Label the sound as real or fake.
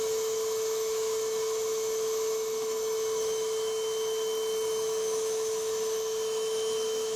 fake